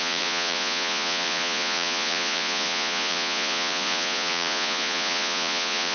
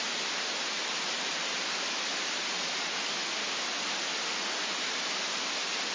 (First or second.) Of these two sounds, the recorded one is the second